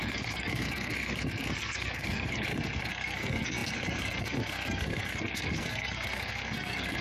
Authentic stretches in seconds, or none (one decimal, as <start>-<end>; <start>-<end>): none